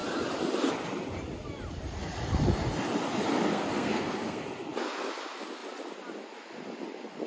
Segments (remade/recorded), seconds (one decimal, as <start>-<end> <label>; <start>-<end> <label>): 0.0-3.5 recorded; 3.5-4.4 remade; 4.4-7.3 recorded